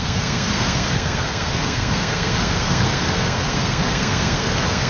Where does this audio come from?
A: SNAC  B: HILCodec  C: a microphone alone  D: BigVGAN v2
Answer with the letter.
A